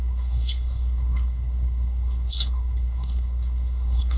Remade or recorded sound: remade